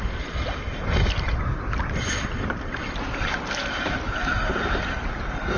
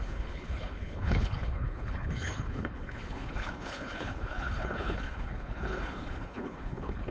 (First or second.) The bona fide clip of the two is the first